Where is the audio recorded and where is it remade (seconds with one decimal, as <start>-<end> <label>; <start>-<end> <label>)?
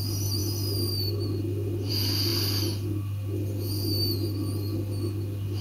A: 0.0-5.6 recorded